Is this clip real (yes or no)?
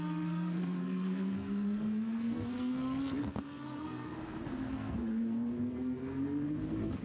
no